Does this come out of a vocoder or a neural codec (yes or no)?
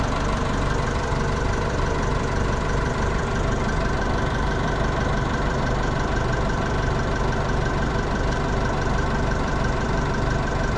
yes